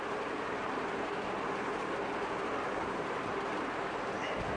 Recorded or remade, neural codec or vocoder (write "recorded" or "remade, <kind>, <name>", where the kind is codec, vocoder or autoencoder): recorded